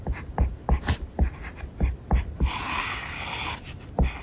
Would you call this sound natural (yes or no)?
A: yes